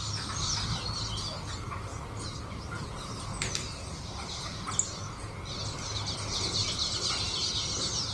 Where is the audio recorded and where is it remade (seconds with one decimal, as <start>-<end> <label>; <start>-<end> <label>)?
0.0-6.6 recorded; 6.6-8.1 remade